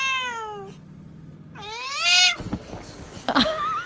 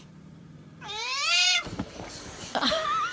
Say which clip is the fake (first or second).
second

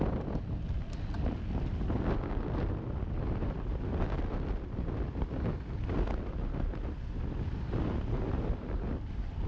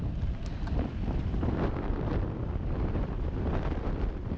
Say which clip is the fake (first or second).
second